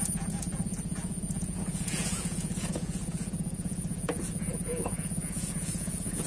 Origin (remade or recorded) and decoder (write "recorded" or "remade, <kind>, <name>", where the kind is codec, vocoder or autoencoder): remade, vocoder, Vocos